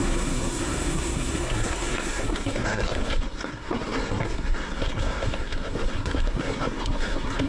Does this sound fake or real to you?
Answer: fake